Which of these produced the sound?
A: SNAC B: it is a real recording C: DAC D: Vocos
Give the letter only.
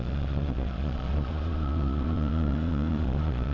D